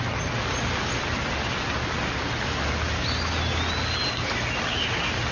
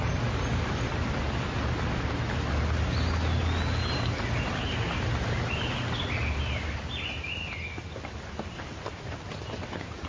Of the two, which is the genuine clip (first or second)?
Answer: first